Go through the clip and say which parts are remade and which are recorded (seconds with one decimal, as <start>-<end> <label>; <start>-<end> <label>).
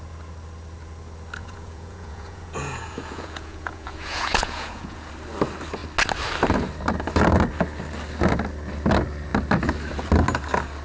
0.0-1.4 recorded; 1.4-5.1 remade; 5.1-10.8 recorded